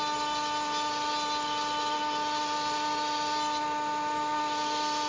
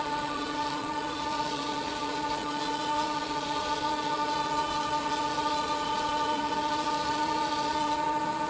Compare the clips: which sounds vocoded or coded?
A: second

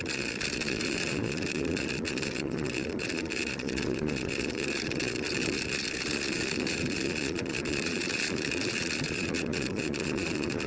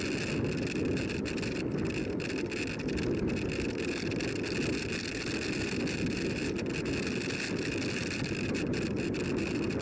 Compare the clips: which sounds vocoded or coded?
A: first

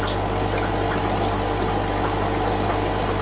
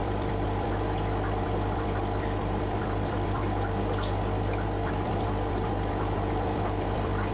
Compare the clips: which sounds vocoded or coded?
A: second